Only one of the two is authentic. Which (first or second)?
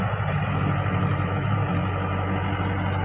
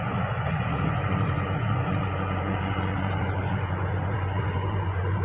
first